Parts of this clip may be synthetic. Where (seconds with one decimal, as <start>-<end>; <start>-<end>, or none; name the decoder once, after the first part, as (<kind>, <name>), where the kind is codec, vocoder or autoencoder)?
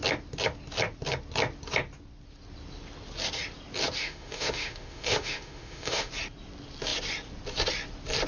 4.0-6.1 (autoencoder, DAC-VAE)